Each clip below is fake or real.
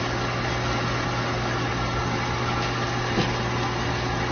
real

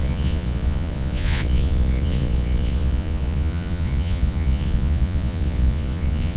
fake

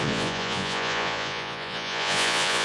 fake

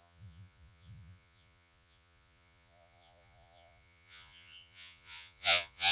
fake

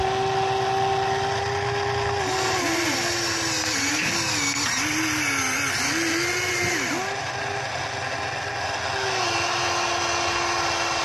real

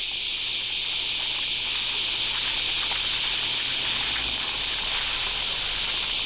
real